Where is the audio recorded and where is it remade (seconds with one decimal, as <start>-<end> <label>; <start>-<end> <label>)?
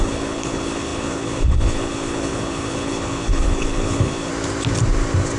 0.0-4.3 remade; 4.3-5.4 recorded